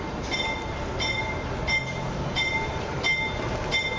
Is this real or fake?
real